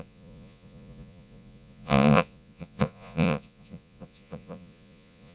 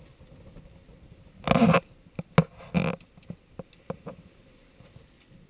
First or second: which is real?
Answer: second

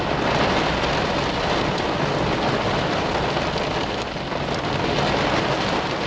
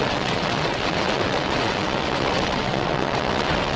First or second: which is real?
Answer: first